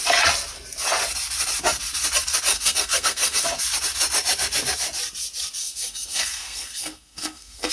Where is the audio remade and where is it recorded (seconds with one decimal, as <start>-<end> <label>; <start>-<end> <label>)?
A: 0.0-2.5 recorded; 2.5-3.4 remade; 3.4-5.6 recorded; 5.6-7.7 remade